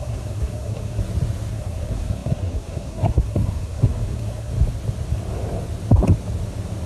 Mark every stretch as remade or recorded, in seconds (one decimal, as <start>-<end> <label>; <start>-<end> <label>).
0.0-1.0 remade; 1.0-1.5 recorded; 1.5-4.5 remade; 4.5-6.9 recorded